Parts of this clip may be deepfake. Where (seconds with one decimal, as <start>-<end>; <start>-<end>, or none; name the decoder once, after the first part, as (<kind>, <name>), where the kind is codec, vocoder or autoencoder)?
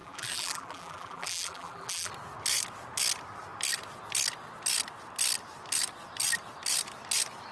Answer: 0.0-2.1 (vocoder, BigVGAN v2)